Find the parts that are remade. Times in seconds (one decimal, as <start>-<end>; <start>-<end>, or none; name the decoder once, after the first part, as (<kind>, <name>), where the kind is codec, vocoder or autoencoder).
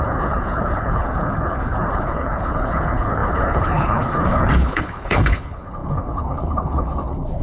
0.0-7.4 (codec, HILCodec)